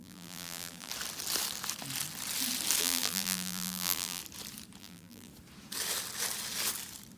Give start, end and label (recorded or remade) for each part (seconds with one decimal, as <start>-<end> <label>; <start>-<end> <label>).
0.0-0.9 remade; 0.9-2.8 recorded; 2.8-4.2 remade; 4.2-4.8 recorded; 4.8-5.3 remade; 5.3-7.2 recorded